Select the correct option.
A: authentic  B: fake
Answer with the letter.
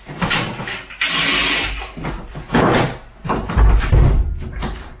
A